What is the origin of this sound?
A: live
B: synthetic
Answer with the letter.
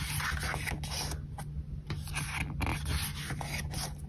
A